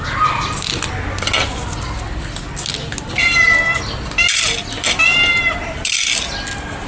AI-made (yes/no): no